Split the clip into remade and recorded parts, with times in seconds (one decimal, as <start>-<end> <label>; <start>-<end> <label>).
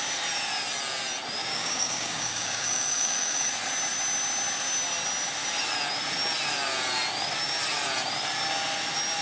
0.0-1.4 recorded; 1.4-3.5 remade; 3.5-9.2 recorded